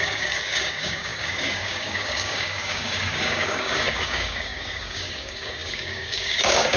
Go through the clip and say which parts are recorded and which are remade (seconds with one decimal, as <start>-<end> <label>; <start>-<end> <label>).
0.0-6.8 remade